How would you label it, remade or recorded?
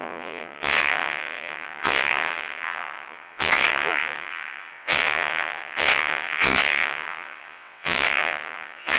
remade